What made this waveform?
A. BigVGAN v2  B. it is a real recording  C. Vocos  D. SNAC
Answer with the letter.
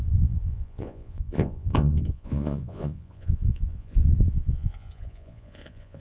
C